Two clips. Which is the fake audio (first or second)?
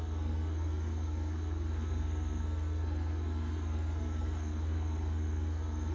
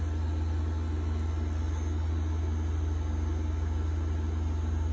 first